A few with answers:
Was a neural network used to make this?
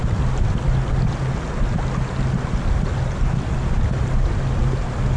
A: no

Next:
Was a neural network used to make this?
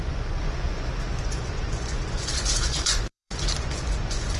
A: yes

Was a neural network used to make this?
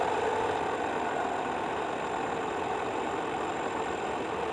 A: no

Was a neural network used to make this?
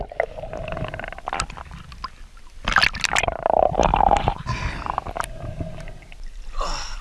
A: no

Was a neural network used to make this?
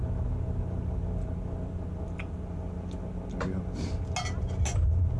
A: no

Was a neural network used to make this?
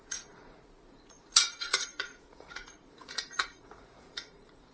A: yes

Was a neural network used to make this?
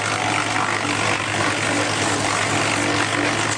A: no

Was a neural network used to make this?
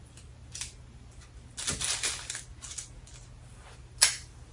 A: no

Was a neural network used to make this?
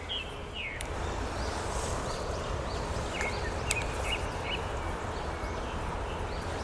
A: no